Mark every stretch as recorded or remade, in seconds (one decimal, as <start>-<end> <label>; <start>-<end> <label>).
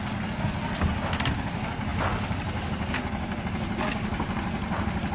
0.0-5.1 recorded